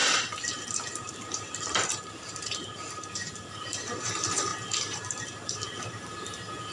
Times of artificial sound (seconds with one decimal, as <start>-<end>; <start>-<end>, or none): 0.0-6.7